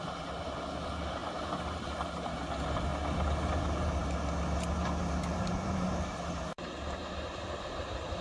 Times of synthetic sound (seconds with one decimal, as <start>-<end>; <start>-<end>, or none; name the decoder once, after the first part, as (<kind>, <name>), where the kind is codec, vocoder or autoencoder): 0.0-2.9 (vocoder, BigVGAN v2); 3.6-4.0; 5.0-8.2